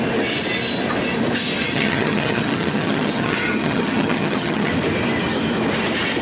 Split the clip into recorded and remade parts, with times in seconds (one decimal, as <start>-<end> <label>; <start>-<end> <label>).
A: 0.0-1.6 recorded; 1.6-4.7 remade; 4.7-6.2 recorded